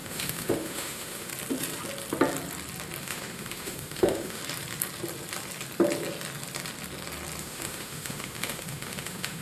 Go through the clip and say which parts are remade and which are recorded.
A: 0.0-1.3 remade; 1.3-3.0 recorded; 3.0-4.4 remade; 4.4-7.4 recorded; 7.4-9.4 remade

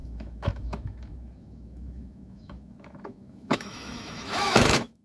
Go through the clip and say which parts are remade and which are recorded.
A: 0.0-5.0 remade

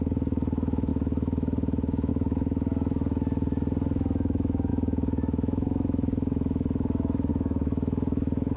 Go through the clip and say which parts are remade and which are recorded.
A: 0.0-8.6 remade

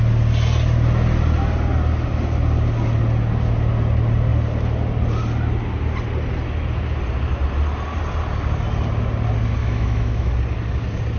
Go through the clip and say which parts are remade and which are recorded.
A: 0.0-9.6 recorded; 9.6-10.3 remade; 10.3-11.2 recorded

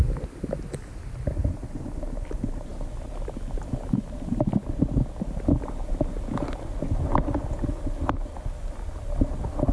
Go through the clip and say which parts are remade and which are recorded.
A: 0.0-9.7 recorded

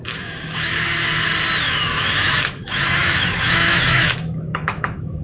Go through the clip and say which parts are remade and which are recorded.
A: 0.0-0.7 remade; 0.7-1.6 recorded; 1.6-5.2 remade

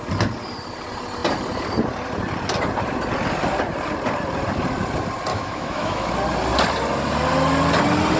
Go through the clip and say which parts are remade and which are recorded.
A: 0.0-5.3 recorded; 5.3-6.1 remade; 6.1-8.2 recorded

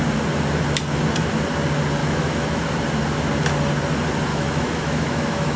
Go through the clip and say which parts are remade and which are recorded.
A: 0.0-2.0 recorded; 2.0-2.6 remade; 2.6-4.3 recorded; 4.3-5.6 remade